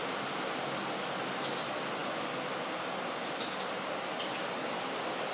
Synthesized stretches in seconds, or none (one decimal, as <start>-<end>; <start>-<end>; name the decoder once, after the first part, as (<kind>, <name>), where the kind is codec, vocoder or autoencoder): none